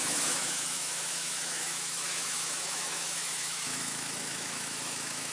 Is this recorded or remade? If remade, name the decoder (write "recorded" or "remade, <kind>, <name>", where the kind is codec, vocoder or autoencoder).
remade, autoencoder, DAC-VAE